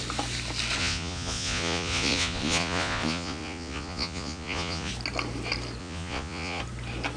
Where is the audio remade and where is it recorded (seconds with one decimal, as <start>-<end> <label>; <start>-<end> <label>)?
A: 0.0-0.8 recorded; 0.8-4.9 remade; 4.9-5.8 recorded; 5.8-6.6 remade; 6.6-7.2 recorded